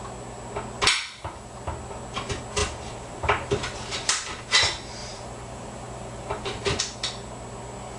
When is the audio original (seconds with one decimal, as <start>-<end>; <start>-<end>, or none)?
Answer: 0.0-2.6; 4.4-5.0; 6.8-8.0